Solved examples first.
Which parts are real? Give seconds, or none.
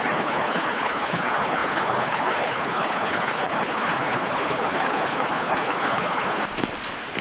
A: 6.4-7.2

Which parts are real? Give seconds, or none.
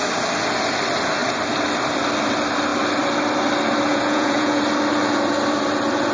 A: 0.0-3.9; 4.6-6.1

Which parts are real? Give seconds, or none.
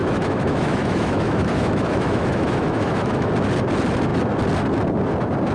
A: 3.3-5.5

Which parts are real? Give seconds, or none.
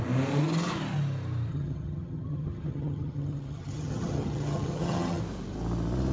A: 0.0-1.5; 5.2-6.1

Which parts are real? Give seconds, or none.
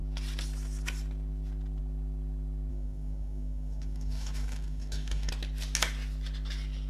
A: 0.0-2.7; 5.3-6.9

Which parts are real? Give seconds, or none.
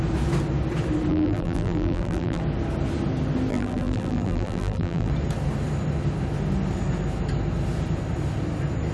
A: 0.0-1.1; 2.4-3.5; 5.1-8.9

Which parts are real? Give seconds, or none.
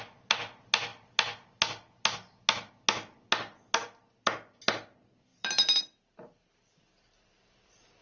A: 0.0-5.3; 7.3-8.0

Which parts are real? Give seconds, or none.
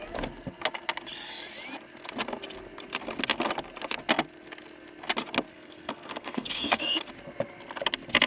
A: 0.0-5.5; 7.0-8.3